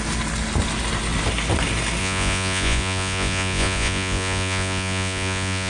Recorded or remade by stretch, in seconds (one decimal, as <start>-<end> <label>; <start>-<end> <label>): 0.0-2.0 recorded; 2.0-5.7 remade